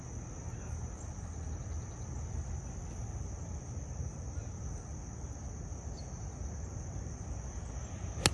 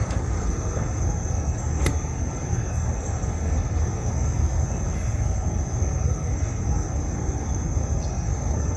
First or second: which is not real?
second